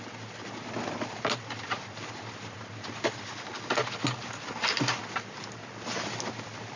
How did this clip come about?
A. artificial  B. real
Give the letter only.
B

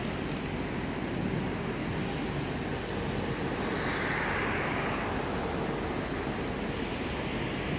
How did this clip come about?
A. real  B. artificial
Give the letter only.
A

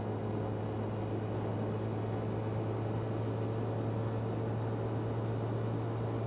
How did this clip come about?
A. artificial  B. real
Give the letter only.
B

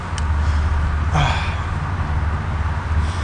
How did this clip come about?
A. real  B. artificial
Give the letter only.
A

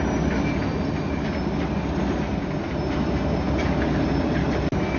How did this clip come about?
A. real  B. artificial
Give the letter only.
A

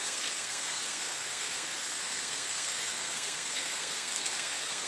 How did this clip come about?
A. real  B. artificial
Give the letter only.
B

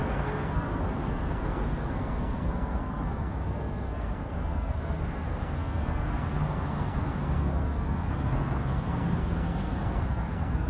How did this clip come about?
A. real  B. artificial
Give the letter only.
B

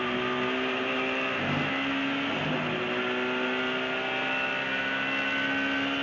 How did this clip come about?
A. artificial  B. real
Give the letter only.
B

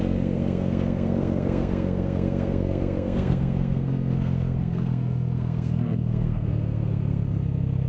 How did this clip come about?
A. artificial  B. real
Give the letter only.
A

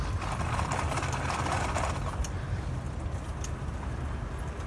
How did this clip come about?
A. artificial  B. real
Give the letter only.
B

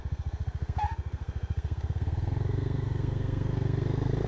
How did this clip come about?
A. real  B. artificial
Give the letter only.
B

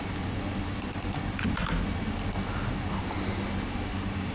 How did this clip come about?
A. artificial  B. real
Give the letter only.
B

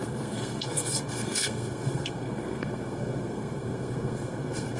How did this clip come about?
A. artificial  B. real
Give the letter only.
A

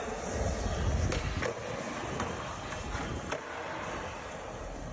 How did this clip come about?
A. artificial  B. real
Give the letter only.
B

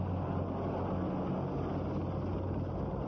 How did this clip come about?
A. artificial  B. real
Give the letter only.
B